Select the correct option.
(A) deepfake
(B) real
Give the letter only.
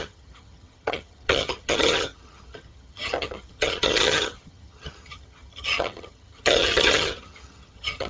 A